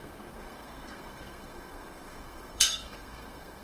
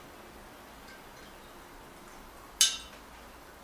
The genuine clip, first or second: second